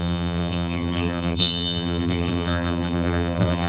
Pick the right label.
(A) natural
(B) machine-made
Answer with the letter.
B